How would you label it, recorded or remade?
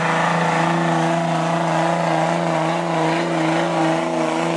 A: recorded